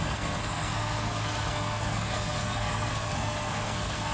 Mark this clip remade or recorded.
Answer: remade